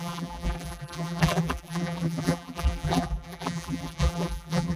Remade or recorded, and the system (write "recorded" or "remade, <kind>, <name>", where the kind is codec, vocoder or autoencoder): remade, vocoder, BigVGAN v2